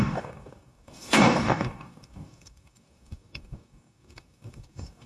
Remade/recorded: remade